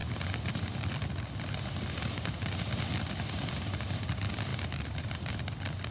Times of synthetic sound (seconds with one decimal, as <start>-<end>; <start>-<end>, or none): none